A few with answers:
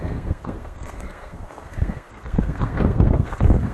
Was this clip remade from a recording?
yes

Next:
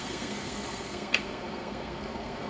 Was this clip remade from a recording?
yes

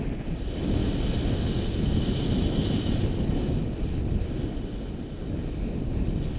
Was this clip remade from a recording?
no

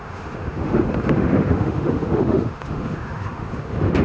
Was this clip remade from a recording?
yes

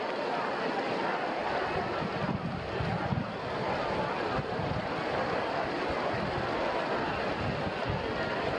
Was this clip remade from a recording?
no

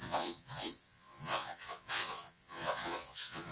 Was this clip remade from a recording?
yes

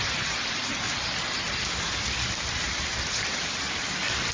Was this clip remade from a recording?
no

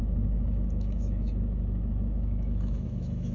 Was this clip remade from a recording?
yes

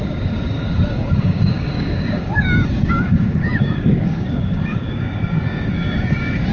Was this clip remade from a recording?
yes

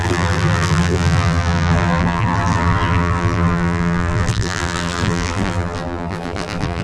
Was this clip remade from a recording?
yes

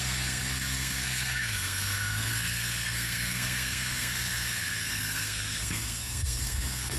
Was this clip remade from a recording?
yes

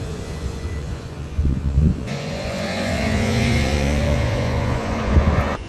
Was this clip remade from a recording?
yes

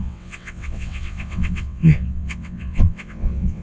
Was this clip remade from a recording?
yes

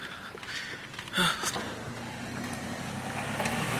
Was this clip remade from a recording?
no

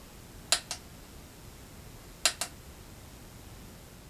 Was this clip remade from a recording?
no